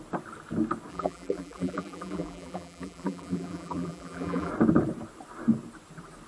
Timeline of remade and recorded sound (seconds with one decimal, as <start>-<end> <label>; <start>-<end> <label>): 0.0-0.9 recorded; 0.9-4.5 remade; 4.5-6.3 recorded

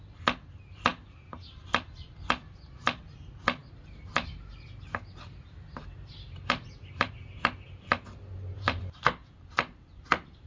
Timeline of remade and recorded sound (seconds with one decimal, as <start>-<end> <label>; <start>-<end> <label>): 0.0-3.6 recorded; 3.6-8.8 remade; 8.8-10.5 recorded

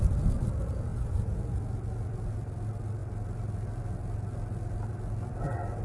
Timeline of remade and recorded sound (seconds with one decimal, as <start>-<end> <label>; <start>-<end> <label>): 0.0-0.9 recorded; 0.9-1.4 remade; 1.4-5.8 recorded

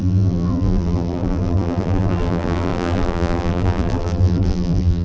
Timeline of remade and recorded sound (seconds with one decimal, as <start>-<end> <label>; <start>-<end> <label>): 0.0-5.0 remade

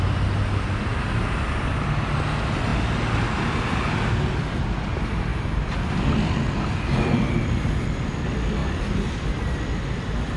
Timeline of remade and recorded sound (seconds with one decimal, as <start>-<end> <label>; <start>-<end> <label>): 0.0-5.3 recorded; 5.3-8.2 remade; 8.2-8.6 recorded; 8.6-9.4 remade; 9.4-10.4 recorded